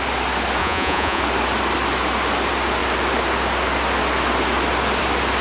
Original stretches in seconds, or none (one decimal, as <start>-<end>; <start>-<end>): 0.0-0.6; 1.2-5.4